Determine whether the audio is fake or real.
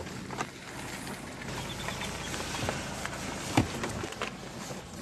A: real